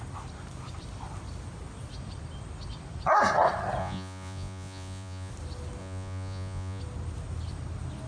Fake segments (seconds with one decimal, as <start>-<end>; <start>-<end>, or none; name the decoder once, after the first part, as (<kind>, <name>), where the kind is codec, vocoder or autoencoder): 3.8-5.3 (vocoder, Vocos); 5.8-6.8